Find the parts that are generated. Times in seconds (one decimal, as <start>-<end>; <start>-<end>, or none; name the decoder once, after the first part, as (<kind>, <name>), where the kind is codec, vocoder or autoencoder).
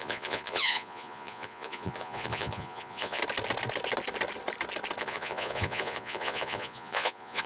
0.0-3.2 (vocoder, Vocos); 5.0-7.5